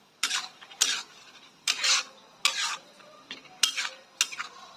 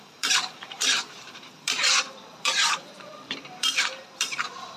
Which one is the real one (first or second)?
first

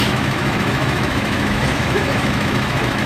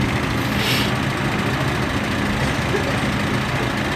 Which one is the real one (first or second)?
second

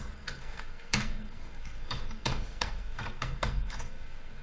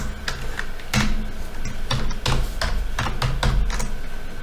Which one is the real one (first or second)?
second